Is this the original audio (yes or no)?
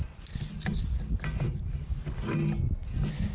yes